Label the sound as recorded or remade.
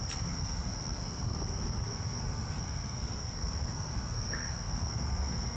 remade